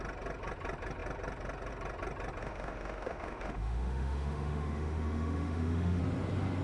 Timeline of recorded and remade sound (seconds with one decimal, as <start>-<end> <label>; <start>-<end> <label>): 0.0-2.4 recorded; 2.4-6.0 remade; 6.0-6.6 recorded